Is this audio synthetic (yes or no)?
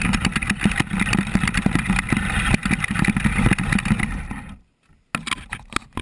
no